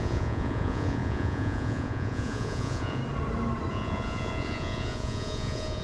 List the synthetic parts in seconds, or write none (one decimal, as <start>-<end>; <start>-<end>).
0.0-3.0; 3.7-5.8